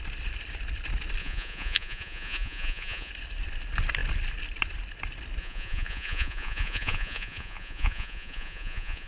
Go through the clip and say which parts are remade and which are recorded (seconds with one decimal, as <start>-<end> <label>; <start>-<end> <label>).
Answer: 0.0-1.2 recorded; 1.2-3.1 remade; 3.1-5.4 recorded; 5.4-9.1 remade